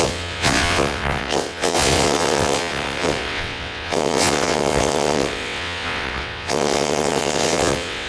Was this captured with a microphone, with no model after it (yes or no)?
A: no